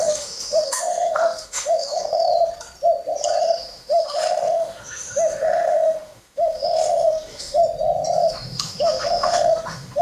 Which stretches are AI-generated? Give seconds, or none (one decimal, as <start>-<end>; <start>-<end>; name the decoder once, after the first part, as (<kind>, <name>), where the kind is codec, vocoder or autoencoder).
0.0-2.3 (autoencoder, DAC-VAE); 3.4-7.6; 8.3-10.0